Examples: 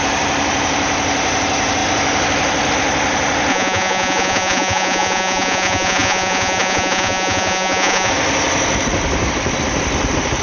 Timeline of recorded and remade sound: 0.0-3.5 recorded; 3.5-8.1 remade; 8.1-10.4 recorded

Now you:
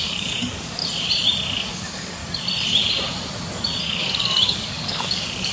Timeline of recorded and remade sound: 0.0-0.8 remade; 0.8-1.7 recorded; 1.7-2.2 remade; 2.2-3.8 recorded; 3.8-5.5 remade